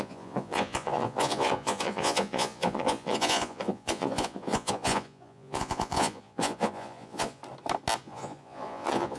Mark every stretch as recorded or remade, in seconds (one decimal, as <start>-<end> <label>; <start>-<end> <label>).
0.0-7.4 remade; 7.4-8.0 recorded; 8.0-9.2 remade

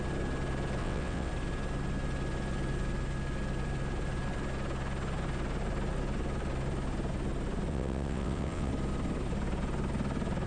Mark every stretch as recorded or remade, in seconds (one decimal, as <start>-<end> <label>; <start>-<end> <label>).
0.0-0.8 recorded; 0.8-1.3 remade; 1.3-7.7 recorded; 7.7-8.7 remade; 8.7-10.5 recorded

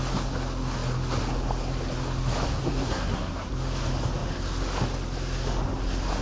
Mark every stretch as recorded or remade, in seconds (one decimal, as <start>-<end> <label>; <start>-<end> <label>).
0.0-2.5 recorded; 2.5-3.5 remade; 3.5-6.2 recorded

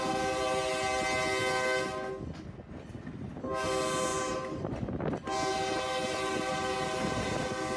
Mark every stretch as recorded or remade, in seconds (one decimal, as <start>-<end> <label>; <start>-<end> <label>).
0.0-4.1 recorded; 4.1-6.5 remade; 6.5-7.8 recorded

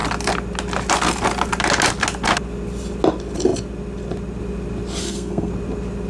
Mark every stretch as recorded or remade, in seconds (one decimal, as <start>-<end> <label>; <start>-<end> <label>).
0.0-5.0 recorded; 5.0-5.5 remade; 5.5-6.1 recorded

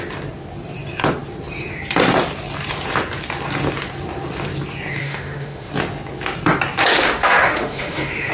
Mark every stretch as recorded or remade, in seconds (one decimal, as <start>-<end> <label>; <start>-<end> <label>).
0.0-5.0 recorded; 5.0-5.7 remade; 5.7-6.9 recorded; 6.9-8.3 remade

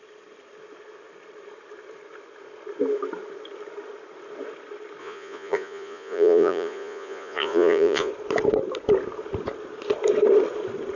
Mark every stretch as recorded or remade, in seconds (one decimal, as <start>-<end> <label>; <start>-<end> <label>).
0.0-5.0 recorded; 5.0-8.1 remade; 8.1-11.0 recorded

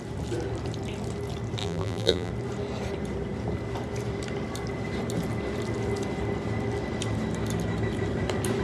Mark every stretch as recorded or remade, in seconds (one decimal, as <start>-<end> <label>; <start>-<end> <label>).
0.0-1.6 recorded; 1.6-2.3 remade; 2.3-8.6 recorded